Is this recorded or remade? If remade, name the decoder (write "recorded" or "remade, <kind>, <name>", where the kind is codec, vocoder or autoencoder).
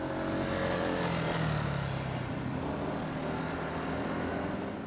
recorded